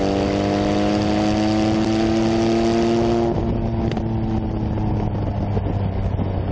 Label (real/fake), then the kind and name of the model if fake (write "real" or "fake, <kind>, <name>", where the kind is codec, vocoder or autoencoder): real